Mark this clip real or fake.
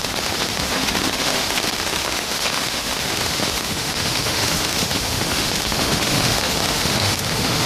fake